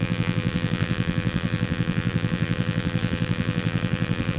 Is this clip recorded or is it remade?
remade